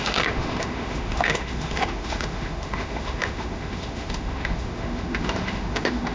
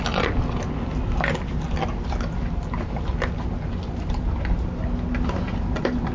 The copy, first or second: first